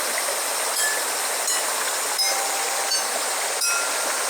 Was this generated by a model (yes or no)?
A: no